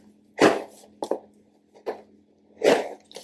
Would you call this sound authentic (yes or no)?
yes